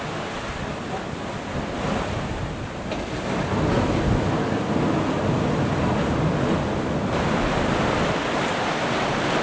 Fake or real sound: real